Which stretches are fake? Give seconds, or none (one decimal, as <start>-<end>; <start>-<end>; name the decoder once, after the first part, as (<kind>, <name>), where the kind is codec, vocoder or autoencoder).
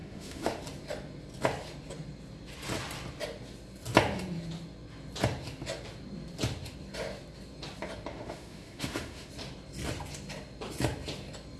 0.0-0.6 (autoencoder, DAC-VAE); 8.1-9.3